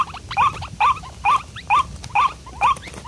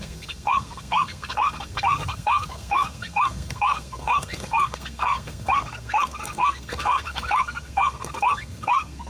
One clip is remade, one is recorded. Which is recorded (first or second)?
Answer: first